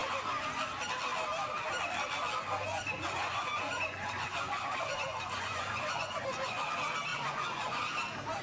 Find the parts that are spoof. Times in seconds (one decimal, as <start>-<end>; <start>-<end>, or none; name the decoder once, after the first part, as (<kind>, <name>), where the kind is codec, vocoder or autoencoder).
0.0-0.6 (vocoder, Vocos); 2.7-6.6; 7.1-7.8